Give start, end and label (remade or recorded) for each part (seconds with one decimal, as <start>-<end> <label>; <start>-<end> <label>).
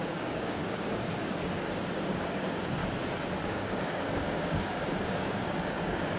0.0-0.6 remade; 0.6-2.0 recorded; 2.0-2.8 remade; 2.8-3.4 recorded; 3.4-6.2 remade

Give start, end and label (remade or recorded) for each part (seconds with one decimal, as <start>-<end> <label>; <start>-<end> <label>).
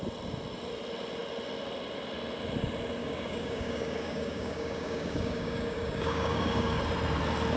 0.0-3.0 recorded; 3.0-6.8 remade; 6.8-7.6 recorded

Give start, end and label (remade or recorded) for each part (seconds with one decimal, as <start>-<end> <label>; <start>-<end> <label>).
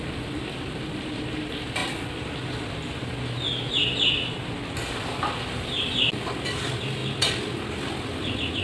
0.0-8.6 recorded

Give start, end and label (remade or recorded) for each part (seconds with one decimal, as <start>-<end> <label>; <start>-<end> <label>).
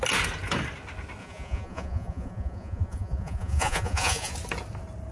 0.0-1.2 recorded; 1.2-4.3 remade; 4.3-5.1 recorded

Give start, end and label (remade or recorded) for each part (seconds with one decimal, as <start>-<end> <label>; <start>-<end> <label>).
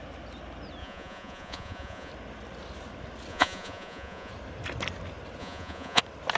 0.0-0.8 recorded; 0.8-2.1 remade; 2.1-3.3 recorded; 3.3-4.3 remade; 4.3-5.4 recorded; 5.4-6.0 remade; 6.0-6.4 recorded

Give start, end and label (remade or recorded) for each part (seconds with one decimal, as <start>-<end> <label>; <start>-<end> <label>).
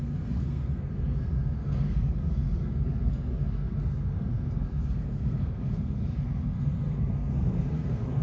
0.0-8.2 remade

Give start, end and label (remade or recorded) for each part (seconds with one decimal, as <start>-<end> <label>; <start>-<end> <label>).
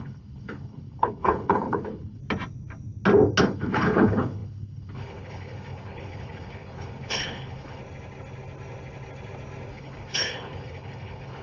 0.0-2.2 remade; 2.2-3.4 recorded; 3.4-7.8 remade; 7.8-9.7 recorded; 9.7-11.4 remade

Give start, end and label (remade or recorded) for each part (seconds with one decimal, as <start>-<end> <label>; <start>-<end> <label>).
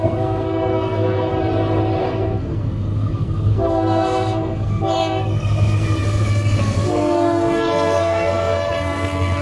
0.0-1.3 remade; 1.3-2.0 recorded; 2.0-9.4 remade